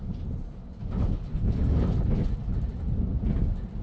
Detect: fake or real real